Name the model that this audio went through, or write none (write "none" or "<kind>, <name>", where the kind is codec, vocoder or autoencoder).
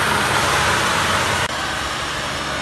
none